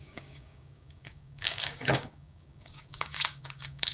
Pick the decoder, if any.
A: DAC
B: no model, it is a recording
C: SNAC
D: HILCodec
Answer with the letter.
A